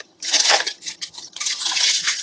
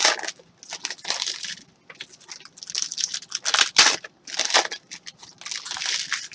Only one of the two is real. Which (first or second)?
second